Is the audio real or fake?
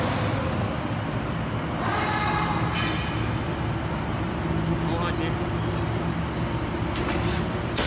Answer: real